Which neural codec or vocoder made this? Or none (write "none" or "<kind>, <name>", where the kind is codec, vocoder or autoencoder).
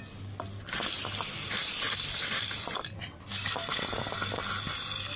none